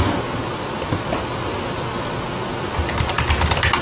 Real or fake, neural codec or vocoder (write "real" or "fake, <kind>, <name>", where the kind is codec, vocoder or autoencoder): real